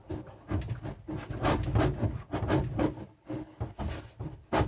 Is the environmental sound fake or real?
real